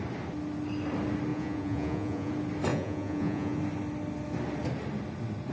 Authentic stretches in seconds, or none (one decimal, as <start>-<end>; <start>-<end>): 0.0-1.3; 2.3-2.7; 3.6-5.5